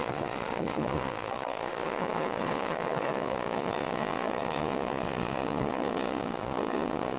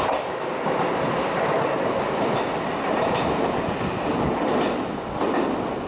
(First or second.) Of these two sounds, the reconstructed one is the first